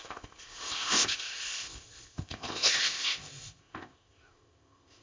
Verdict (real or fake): fake